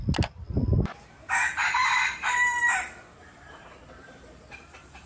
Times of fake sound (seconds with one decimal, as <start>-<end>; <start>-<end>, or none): 1.8-5.1